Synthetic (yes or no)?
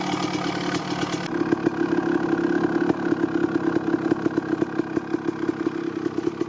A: no